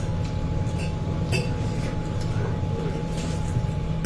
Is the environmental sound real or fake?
real